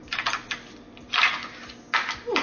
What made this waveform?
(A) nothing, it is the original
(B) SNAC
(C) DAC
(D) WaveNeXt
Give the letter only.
A